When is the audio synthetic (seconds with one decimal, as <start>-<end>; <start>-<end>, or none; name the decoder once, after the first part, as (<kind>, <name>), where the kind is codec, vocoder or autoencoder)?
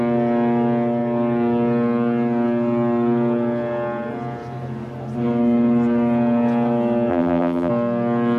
7.1-7.7 (vocoder, BigVGAN v2)